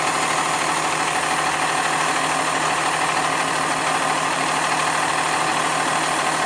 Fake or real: real